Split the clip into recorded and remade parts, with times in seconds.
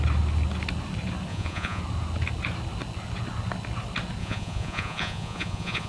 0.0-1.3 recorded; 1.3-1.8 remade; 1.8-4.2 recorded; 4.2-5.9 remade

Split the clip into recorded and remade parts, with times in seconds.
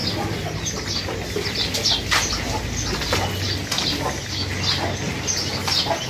0.0-6.1 recorded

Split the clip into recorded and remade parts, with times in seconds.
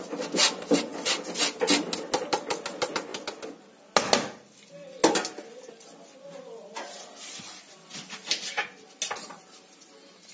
0.0-10.3 recorded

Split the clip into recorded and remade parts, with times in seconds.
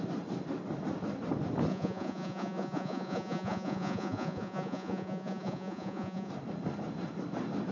0.0-1.7 recorded; 1.7-6.3 remade; 6.3-7.7 recorded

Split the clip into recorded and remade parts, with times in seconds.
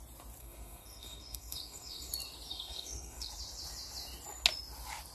0.0-0.4 recorded; 0.4-2.1 remade; 2.1-2.5 recorded; 2.5-3.3 remade; 3.3-5.1 recorded